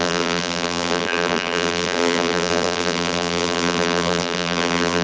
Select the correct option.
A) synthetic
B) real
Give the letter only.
A